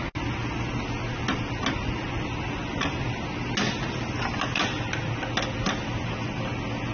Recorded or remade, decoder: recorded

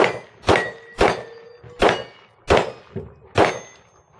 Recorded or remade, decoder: recorded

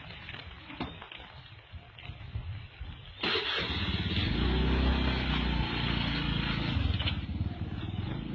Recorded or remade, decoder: recorded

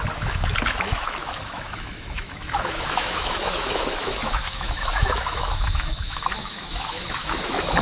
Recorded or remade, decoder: remade, autoencoder, DAC-VAE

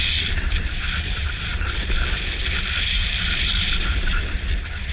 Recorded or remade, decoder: recorded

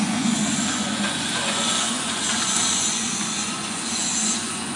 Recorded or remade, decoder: remade, vocoder, Vocos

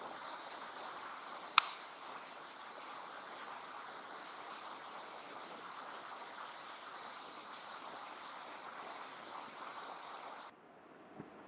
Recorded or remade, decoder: recorded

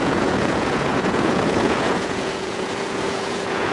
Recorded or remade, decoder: remade, vocoder, Vocos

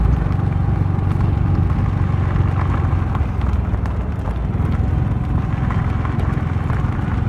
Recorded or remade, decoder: recorded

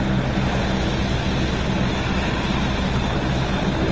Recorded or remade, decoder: recorded